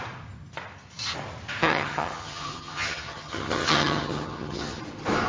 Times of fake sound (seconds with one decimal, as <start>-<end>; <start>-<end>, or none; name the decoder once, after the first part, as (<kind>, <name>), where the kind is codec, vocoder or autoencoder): 1.6-4.8 (vocoder, HiFi-GAN)